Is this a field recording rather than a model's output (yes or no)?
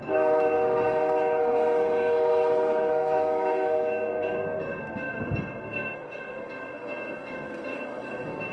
no